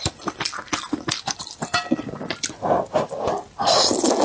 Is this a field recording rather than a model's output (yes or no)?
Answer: yes